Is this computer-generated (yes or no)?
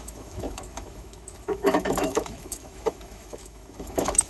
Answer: yes